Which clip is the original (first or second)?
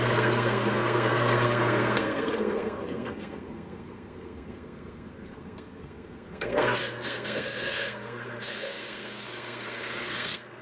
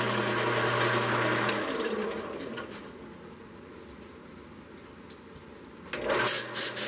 second